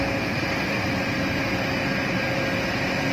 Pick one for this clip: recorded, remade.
recorded